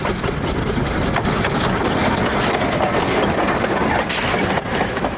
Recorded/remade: recorded